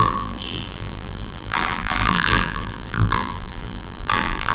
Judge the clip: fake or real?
fake